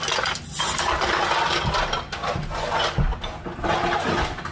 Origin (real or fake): real